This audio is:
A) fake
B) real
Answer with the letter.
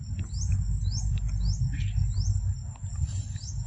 B